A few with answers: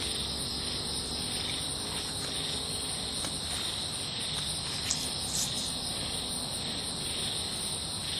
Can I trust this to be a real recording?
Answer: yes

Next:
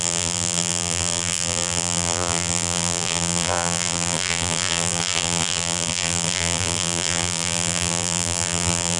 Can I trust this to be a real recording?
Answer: no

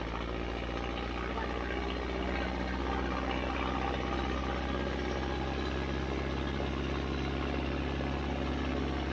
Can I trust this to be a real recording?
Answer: yes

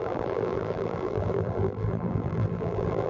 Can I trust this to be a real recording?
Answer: no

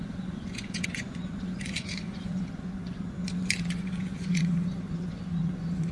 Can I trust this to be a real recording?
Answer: no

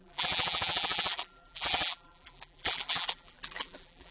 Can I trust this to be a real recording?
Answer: no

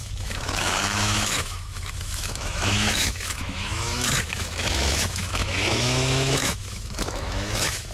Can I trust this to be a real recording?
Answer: no